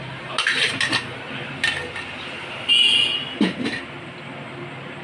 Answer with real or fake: real